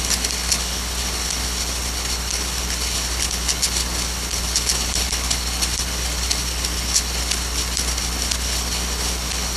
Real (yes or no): no